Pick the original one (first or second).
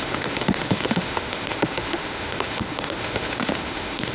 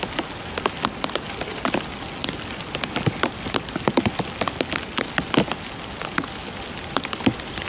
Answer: second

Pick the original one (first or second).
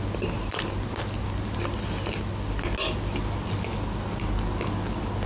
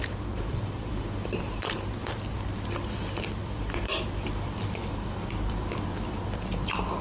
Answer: first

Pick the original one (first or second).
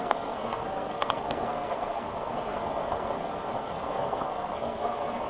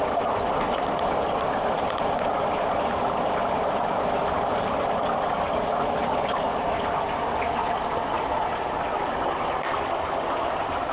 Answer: second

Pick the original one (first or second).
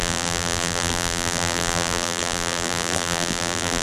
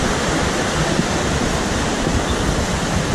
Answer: second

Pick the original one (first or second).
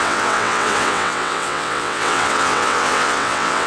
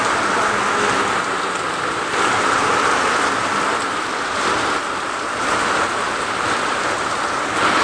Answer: second